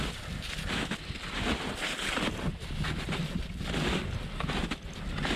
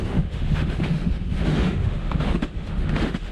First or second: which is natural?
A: first